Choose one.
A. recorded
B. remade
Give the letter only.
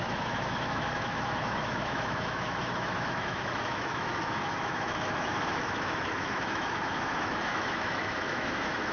B